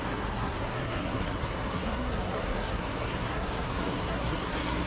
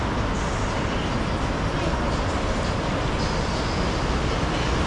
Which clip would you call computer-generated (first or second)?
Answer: first